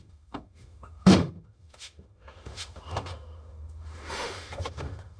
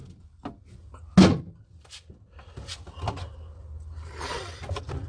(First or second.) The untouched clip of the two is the second